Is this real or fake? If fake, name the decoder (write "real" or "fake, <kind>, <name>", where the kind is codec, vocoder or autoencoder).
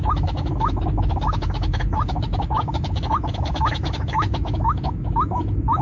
fake, autoencoder, DAC-VAE